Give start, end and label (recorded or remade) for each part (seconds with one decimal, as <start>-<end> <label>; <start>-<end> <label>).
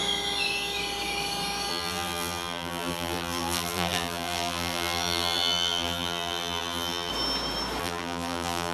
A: 0.0-1.7 recorded; 1.7-7.1 remade; 7.1-7.8 recorded; 7.8-8.7 remade